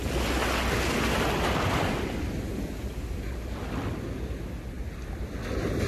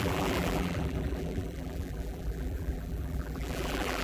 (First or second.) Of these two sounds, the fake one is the second